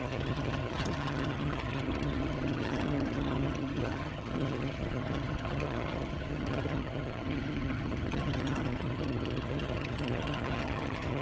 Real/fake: fake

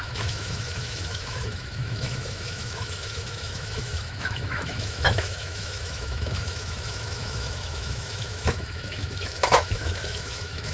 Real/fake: fake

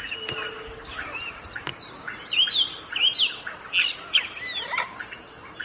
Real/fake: real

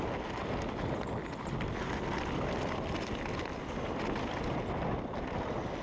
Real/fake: real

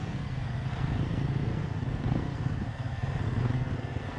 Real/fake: fake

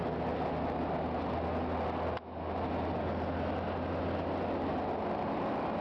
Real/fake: real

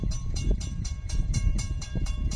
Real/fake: fake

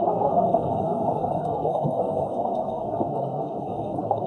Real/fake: fake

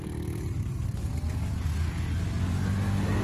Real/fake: real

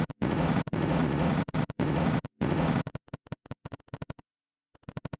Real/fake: fake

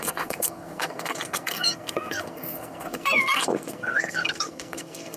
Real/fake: fake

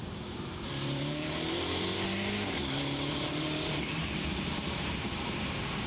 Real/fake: fake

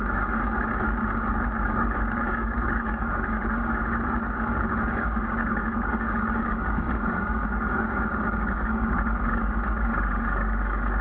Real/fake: fake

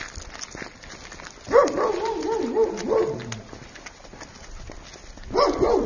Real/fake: real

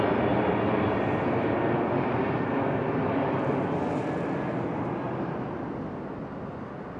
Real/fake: real